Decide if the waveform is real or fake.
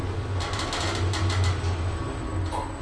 real